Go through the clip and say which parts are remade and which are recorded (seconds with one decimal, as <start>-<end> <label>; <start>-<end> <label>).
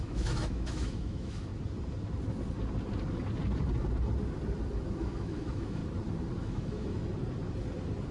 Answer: 0.0-1.5 remade; 1.5-5.0 recorded; 5.0-5.8 remade; 5.8-6.4 recorded; 6.4-7.0 remade; 7.0-8.1 recorded